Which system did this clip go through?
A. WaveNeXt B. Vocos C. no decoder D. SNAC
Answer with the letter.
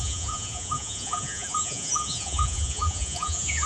B